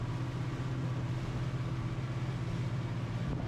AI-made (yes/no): no